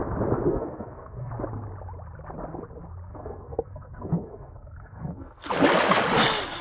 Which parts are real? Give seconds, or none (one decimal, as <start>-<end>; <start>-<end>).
0.0-0.5; 1.3-3.1; 5.5-6.6